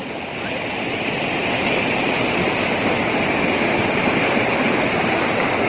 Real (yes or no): yes